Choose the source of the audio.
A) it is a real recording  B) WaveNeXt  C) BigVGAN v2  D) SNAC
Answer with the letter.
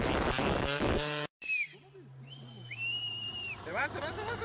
C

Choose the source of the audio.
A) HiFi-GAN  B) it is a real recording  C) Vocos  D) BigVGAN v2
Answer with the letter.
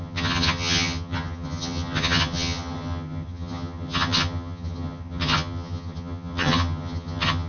A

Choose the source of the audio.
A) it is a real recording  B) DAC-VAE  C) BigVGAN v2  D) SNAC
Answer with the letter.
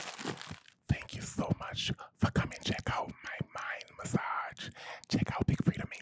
A